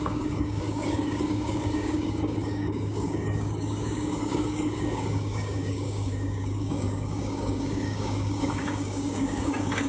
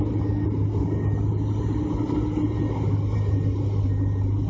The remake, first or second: first